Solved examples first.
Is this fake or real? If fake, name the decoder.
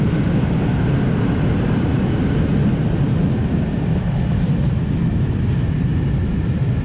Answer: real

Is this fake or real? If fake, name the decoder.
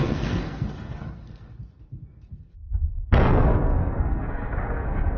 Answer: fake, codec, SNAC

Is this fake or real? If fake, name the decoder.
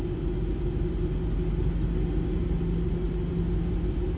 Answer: real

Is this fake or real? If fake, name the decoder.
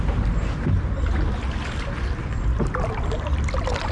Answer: real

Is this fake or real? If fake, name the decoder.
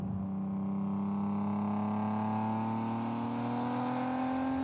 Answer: real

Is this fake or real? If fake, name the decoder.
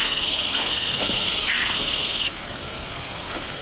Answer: fake, codec, SNAC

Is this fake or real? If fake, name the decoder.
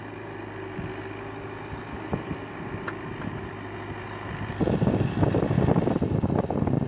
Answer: real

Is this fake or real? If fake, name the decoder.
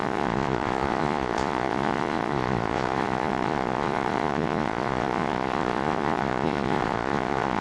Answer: fake, vocoder, Vocos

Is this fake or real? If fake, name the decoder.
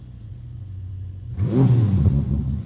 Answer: fake, vocoder, Vocos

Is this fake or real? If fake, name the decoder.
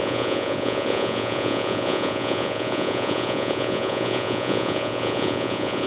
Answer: fake, vocoder, Vocos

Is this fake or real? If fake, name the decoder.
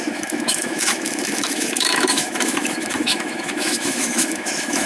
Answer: fake, autoencoder, DAC-VAE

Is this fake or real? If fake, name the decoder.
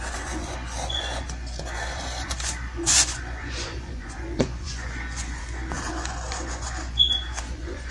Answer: fake, vocoder, Vocos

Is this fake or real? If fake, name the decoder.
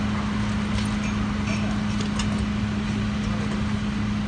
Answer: real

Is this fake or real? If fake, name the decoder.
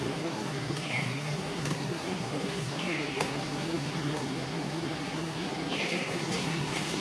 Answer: fake, codec, SNAC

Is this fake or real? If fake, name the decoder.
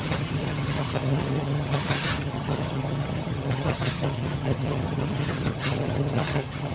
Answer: fake, vocoder, HiFi-GAN